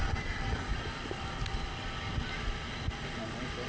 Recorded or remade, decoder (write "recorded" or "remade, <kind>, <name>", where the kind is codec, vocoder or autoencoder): recorded